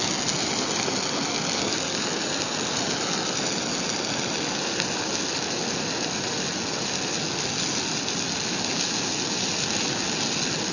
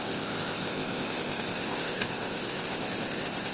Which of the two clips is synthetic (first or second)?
second